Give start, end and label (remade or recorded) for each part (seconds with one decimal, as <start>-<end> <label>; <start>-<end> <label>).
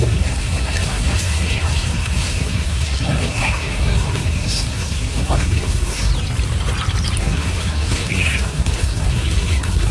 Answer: 0.0-6.1 remade; 6.1-7.2 recorded; 7.2-9.9 remade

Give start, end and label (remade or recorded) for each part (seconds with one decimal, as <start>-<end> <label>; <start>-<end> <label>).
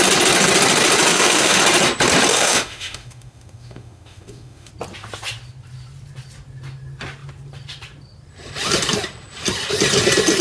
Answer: 0.0-1.1 recorded; 1.1-1.6 remade; 1.6-2.3 recorded; 2.3-4.7 remade; 4.7-10.4 recorded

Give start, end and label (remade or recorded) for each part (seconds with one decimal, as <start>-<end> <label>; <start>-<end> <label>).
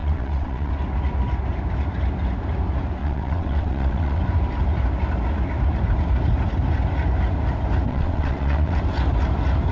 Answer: 0.0-0.7 remade; 0.7-3.0 recorded; 3.0-4.2 remade; 4.2-7.9 recorded; 7.9-8.8 remade; 8.8-9.7 recorded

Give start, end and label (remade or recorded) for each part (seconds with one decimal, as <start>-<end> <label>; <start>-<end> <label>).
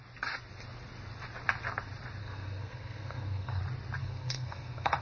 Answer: 0.0-2.2 recorded; 2.2-3.6 remade; 3.6-4.0 recorded; 4.0-5.0 remade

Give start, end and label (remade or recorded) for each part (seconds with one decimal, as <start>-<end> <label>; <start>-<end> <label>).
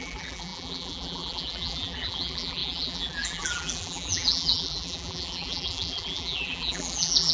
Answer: 0.0-7.3 remade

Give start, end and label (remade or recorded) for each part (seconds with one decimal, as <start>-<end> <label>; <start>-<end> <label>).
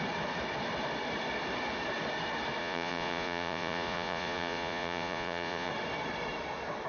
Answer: 0.0-2.6 recorded; 2.6-5.7 remade; 5.7-6.9 recorded